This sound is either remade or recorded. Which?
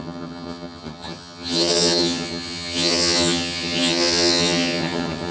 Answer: remade